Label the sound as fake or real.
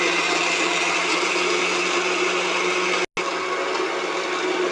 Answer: real